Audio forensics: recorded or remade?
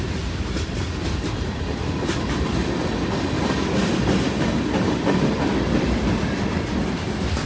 remade